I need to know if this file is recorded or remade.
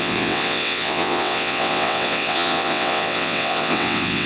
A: remade